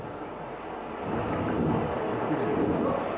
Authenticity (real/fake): real